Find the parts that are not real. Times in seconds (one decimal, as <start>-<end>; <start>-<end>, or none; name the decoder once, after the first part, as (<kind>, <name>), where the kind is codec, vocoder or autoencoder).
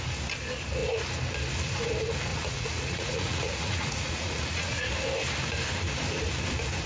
2.3-4.9 (vocoder, Vocos)